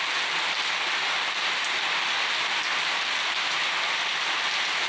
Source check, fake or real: real